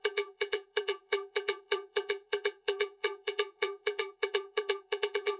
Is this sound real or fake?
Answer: fake